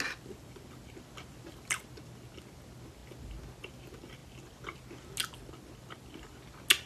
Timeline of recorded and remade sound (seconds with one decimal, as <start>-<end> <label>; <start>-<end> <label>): 0.0-6.9 recorded